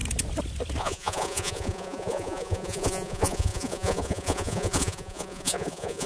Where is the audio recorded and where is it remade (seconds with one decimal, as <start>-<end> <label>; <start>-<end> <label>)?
0.0-0.8 recorded; 0.8-6.1 remade